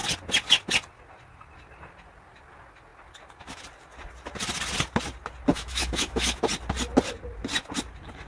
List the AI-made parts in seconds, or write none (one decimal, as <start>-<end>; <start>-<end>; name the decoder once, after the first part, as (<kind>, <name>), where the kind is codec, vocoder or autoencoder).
5.5-6.4 (autoencoder, DAC-VAE)